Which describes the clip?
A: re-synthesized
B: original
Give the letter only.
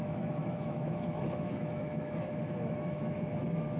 A